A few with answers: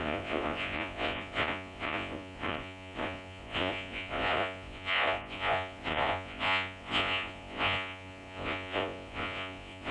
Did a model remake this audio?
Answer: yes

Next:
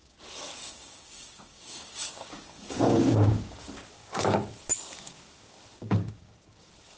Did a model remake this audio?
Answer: yes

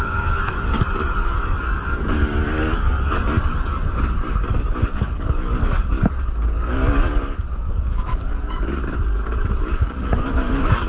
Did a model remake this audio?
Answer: yes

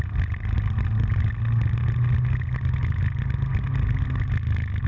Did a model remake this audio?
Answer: no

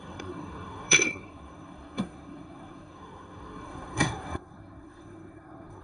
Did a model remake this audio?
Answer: yes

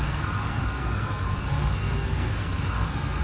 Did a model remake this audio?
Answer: yes